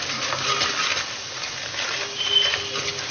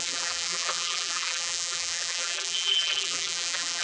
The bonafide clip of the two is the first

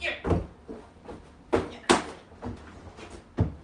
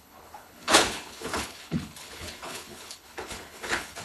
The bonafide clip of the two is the first